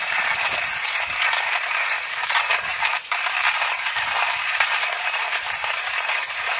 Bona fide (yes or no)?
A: no